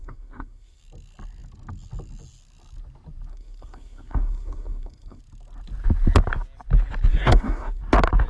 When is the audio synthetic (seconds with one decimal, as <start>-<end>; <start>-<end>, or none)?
0.0-0.8; 3.3-5.2; 7.1-7.8